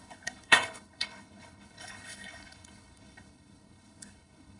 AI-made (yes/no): yes